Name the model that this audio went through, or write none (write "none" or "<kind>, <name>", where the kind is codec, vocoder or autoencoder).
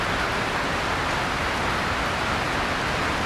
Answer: none